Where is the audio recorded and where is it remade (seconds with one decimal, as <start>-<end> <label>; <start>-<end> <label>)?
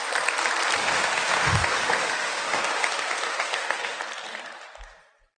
0.0-0.8 recorded; 0.8-4.0 remade; 4.0-5.4 recorded